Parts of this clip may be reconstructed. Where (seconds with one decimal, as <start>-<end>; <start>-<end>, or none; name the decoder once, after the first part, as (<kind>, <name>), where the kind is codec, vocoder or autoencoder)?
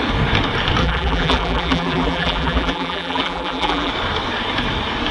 0.8-3.9 (vocoder, BigVGAN v2)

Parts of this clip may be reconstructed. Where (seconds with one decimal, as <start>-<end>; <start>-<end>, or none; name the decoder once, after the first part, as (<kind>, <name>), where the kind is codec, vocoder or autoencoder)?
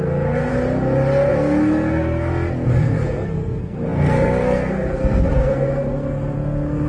0.0-0.5 (codec, SNAC); 1.3-2.3; 2.8-6.9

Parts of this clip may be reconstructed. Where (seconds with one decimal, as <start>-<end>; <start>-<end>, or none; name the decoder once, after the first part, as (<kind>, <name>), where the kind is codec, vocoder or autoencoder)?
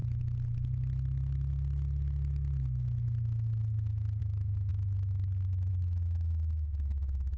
4.2-7.4 (autoencoder, DAC-VAE)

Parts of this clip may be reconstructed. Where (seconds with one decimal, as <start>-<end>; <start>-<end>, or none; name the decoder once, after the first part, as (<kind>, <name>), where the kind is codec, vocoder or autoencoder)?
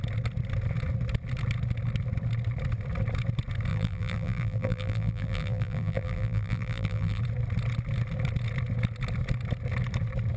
3.7-7.2 (vocoder, BigVGAN v2)